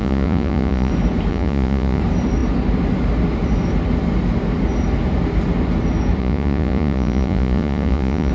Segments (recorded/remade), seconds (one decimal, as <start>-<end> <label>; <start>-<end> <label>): 0.0-0.9 remade; 0.9-1.3 recorded; 1.3-2.0 remade; 2.0-6.2 recorded; 6.2-8.3 remade